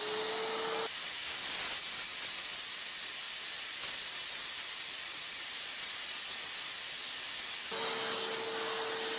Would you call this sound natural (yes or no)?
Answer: yes